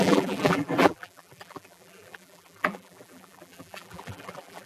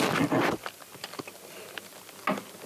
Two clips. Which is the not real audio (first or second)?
first